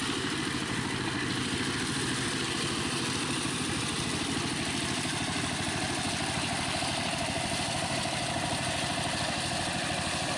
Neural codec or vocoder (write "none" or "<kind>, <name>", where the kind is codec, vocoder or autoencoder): vocoder, BigVGAN v2